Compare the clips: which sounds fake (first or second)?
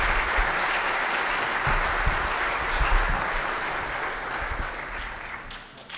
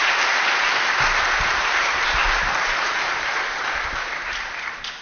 second